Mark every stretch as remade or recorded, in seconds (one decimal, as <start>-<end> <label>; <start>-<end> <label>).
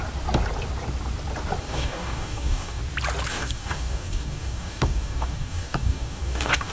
0.0-1.6 recorded; 1.6-2.8 remade; 2.8-3.3 recorded; 3.3-6.7 remade